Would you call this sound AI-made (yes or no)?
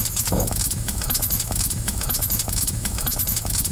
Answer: yes